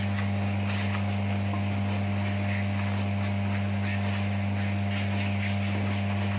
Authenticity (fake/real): real